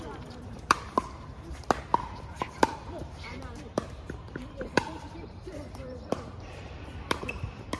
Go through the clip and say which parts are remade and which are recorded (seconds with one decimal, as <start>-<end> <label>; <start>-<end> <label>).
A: 0.0-1.3 remade; 1.3-2.0 recorded; 2.0-7.8 remade